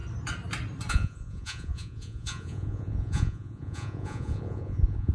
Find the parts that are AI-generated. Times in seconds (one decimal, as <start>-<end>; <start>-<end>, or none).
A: 0.9-5.1